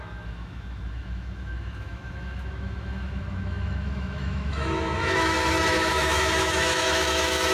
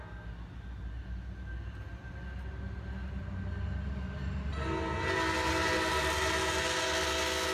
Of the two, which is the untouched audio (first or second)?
second